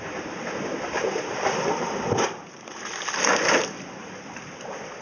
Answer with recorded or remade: recorded